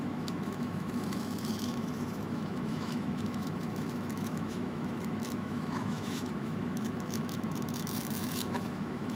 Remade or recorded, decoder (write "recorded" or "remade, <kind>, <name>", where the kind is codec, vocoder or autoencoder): remade, autoencoder, DAC-VAE